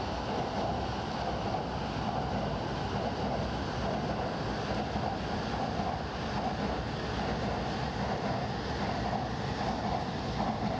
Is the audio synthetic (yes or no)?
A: no